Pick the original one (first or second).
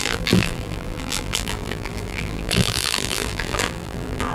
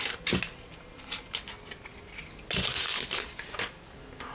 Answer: second